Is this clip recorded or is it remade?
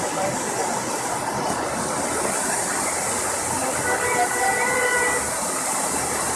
recorded